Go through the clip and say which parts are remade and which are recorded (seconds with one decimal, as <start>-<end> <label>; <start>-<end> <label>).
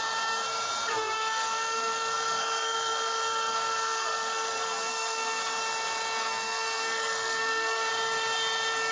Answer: 0.0-1.2 recorded; 1.2-5.4 remade; 5.4-6.2 recorded; 6.2-7.9 remade; 7.9-8.9 recorded